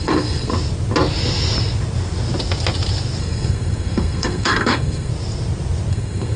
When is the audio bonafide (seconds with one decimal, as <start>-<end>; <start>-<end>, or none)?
0.5-3.2; 5.1-5.9